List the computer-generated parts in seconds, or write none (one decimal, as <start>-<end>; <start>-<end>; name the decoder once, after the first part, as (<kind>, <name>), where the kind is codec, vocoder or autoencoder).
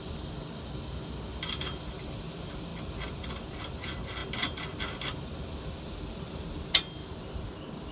7.0-7.9 (vocoder, BigVGAN v2)